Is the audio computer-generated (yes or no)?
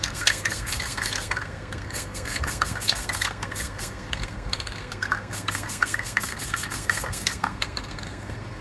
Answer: yes